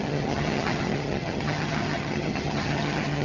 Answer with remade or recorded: remade